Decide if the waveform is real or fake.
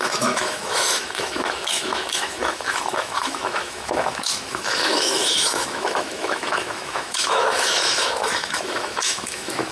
fake